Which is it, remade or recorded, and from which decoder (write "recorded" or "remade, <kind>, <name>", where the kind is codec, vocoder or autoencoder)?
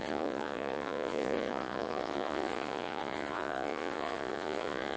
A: remade, vocoder, Vocos